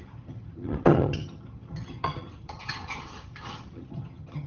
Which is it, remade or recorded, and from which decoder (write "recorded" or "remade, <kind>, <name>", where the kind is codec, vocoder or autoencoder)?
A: remade, vocoder, HiFi-GAN